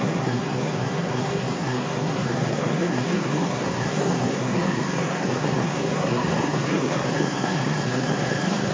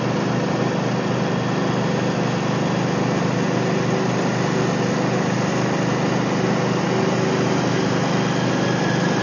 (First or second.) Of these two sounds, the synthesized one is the first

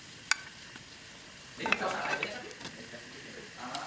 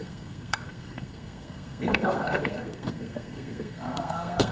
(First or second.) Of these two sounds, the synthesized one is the second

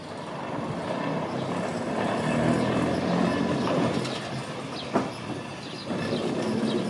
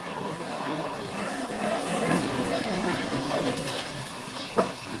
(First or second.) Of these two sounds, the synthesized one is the second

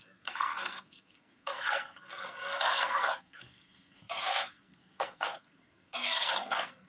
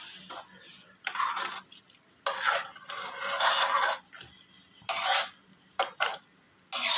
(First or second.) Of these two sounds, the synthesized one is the first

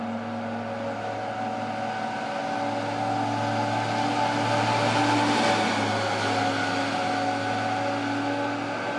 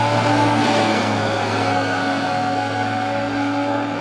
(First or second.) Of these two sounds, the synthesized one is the second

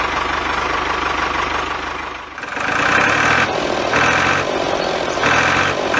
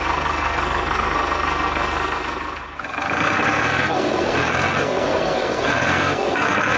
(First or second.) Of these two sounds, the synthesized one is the second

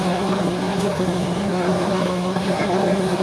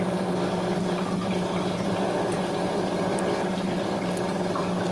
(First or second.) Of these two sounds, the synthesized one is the first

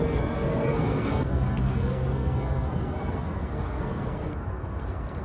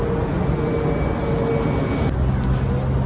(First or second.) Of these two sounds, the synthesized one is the first